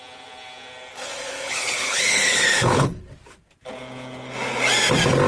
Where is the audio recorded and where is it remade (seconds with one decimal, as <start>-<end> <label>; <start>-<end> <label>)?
0.0-0.9 recorded; 0.9-3.0 remade; 3.0-5.3 recorded